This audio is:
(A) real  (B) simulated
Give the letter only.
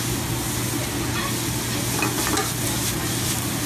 A